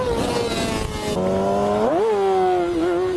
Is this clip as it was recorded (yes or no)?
yes